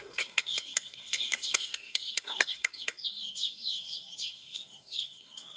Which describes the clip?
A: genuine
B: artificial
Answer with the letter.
B